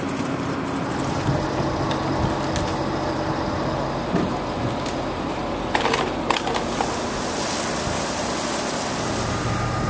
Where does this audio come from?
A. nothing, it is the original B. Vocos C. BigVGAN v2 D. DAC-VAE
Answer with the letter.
A